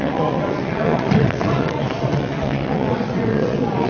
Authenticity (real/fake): fake